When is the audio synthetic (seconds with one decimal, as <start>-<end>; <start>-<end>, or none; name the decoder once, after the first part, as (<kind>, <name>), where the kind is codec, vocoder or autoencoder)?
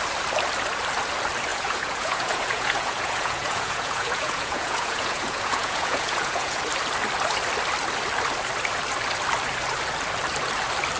1.5-6.6 (vocoder, Vocos)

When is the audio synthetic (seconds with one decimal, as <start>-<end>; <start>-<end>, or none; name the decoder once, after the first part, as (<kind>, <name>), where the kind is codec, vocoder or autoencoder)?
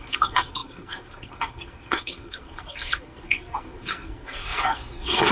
0.0-5.3 (codec, SNAC)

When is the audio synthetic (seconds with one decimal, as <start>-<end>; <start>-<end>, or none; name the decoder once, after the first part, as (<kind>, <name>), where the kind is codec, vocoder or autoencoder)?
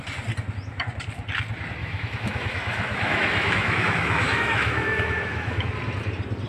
1.8-5.7 (autoencoder, DAC-VAE)